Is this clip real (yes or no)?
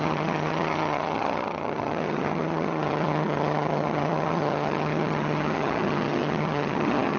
no